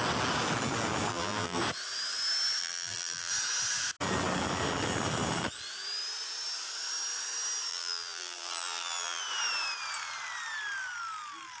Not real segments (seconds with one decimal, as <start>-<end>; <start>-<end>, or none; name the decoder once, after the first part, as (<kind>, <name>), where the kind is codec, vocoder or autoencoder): 1.1-1.6 (vocoder, BigVGAN v2); 2.6-3.3; 7.7-9.2